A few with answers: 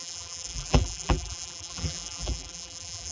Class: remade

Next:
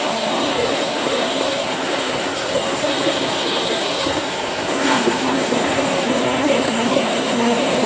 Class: remade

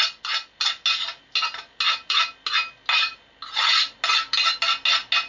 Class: recorded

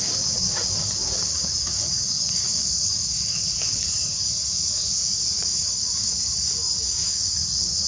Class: remade